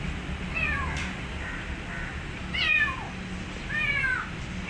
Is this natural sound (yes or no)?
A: yes